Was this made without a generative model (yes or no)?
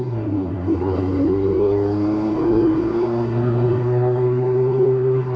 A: no